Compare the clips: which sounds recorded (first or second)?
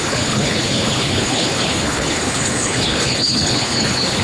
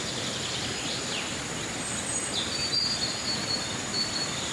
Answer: second